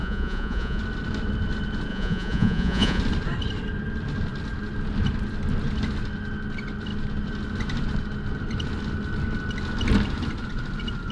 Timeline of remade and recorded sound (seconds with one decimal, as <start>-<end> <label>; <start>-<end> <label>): 0.0-0.8 remade; 0.8-1.9 recorded; 1.9-3.0 remade; 3.0-11.1 recorded